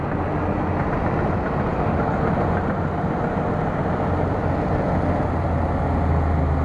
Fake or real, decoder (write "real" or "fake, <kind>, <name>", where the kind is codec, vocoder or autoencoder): real